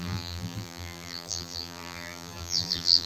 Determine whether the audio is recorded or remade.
remade